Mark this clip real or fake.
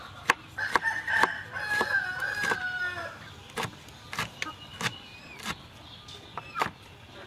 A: real